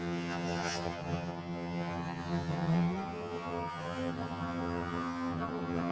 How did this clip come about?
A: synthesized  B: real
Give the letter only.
A